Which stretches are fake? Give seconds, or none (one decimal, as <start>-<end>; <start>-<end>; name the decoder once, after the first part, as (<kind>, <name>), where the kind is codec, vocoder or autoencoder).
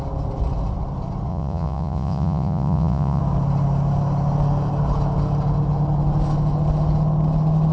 1.3-3.2 (vocoder, Vocos)